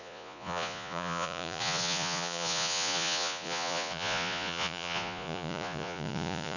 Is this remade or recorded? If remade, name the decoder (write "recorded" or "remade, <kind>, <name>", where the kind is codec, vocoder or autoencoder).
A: remade, vocoder, Vocos